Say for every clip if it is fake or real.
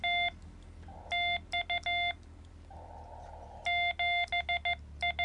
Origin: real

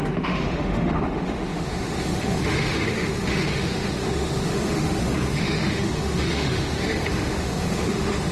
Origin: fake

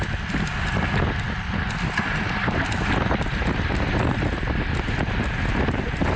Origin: real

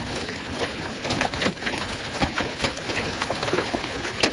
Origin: fake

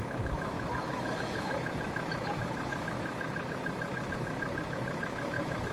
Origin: fake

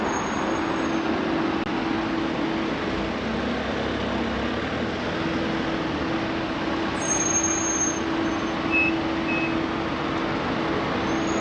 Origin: real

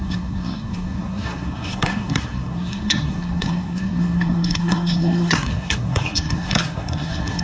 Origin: fake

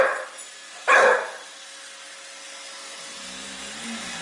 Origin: real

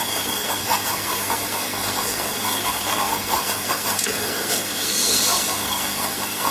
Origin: fake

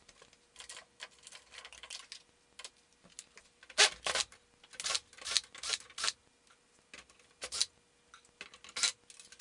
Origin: real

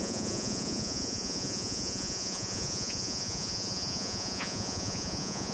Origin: fake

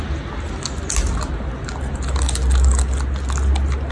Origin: real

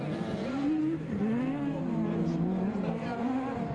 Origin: real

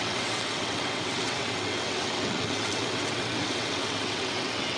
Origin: fake